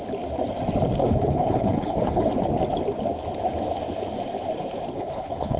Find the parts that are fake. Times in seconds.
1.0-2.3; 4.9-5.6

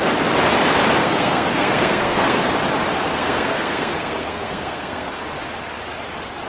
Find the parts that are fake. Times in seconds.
1.0-2.5; 3.1-5.1

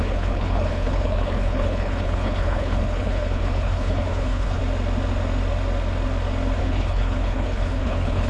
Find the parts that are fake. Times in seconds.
0.0-4.6; 6.6-8.3